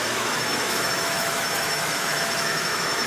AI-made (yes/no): yes